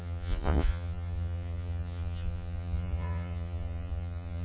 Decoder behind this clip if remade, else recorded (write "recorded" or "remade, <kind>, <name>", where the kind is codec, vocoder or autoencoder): remade, vocoder, Vocos